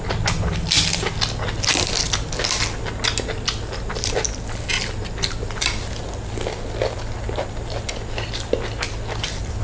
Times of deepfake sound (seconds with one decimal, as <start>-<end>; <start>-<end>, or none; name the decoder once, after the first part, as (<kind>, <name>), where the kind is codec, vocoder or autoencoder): none